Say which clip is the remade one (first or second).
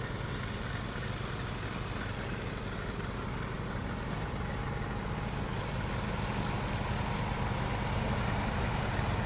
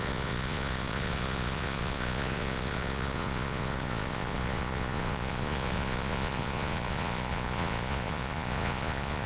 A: second